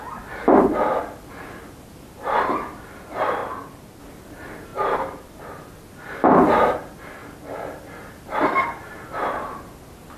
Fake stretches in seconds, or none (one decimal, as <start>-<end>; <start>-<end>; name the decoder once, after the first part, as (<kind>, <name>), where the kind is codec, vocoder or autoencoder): 3.4-4.0 (vocoder, BigVGAN v2); 4.7-5.3; 7.2-7.9

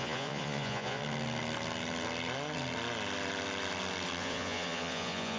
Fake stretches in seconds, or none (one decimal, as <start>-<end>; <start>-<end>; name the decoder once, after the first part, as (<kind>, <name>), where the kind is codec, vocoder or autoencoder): 0.0-1.0 (vocoder, Vocos); 4.2-5.4

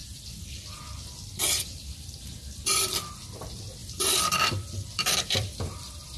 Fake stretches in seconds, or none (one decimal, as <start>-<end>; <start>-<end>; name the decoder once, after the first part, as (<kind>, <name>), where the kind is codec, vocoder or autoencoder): 0.0-0.8 (vocoder, BigVGAN v2); 1.4-3.1; 3.8-6.2